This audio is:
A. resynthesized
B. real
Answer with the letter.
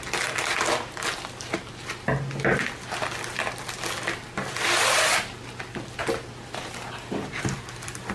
B